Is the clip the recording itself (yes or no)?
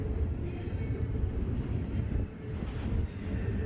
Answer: yes